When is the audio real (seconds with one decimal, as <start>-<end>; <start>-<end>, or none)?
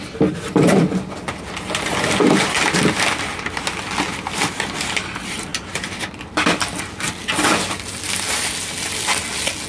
0.0-9.7